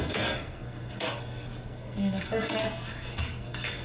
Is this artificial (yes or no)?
yes